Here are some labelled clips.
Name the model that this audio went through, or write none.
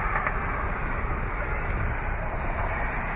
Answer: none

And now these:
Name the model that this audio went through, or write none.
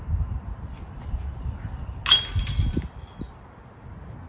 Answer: none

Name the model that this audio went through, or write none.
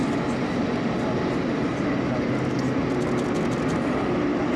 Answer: none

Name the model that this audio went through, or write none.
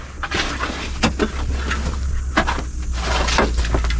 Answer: none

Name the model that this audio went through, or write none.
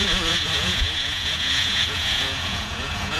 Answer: vocoder, Vocos